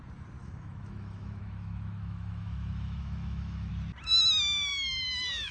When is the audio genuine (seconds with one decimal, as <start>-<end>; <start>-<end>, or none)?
0.0-0.4; 3.7-4.7